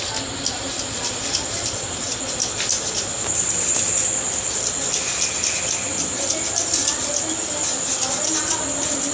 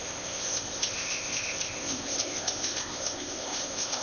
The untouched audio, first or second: first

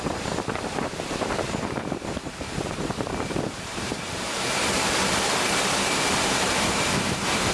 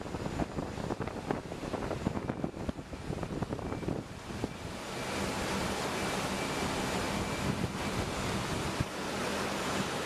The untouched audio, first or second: second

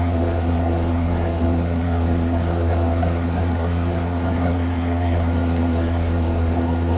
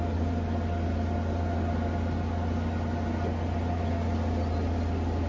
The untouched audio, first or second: second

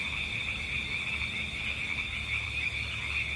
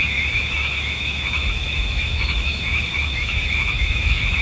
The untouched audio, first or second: first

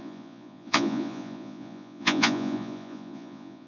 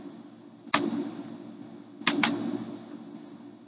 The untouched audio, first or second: second